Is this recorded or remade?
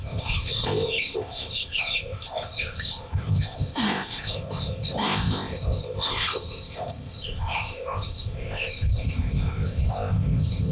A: remade